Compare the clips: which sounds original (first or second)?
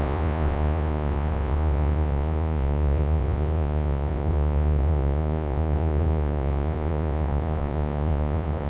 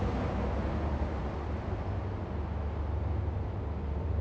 second